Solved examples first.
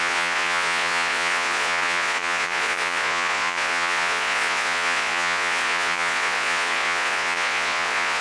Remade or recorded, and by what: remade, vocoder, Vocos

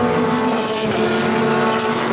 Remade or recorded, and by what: recorded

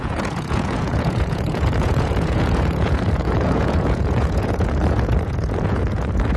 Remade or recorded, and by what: remade, vocoder, Vocos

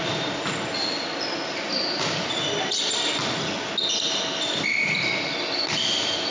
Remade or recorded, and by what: recorded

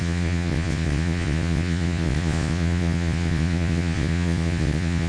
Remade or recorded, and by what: remade, vocoder, Vocos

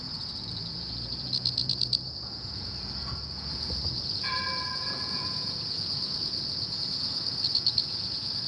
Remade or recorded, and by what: remade, vocoder, Vocos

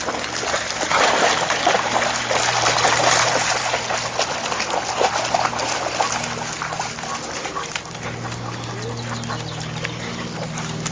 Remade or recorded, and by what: recorded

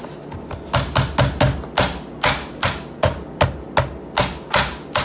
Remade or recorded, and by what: recorded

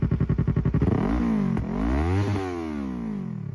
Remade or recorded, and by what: recorded